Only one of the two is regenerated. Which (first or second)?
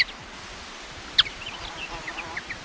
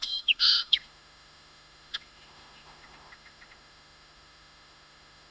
second